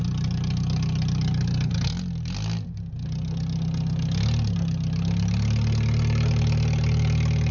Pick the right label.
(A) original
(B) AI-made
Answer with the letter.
A